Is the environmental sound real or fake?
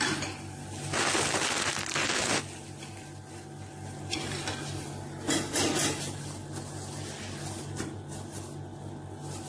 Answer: real